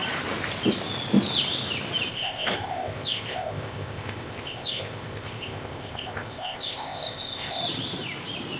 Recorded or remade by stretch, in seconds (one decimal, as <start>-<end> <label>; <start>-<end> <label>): 0.0-2.1 recorded; 2.1-7.6 remade; 7.6-8.6 recorded